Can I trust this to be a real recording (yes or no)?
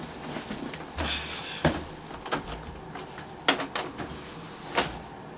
yes